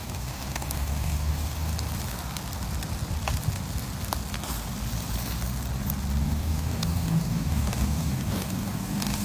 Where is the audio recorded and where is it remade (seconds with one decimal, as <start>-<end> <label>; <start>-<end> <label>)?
0.0-1.7 remade; 1.7-6.2 recorded; 6.2-9.2 remade

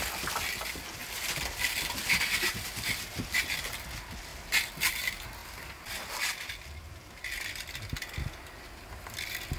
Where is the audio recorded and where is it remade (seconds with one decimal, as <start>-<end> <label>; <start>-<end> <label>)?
0.0-1.0 recorded; 1.0-2.2 remade; 2.2-9.6 recorded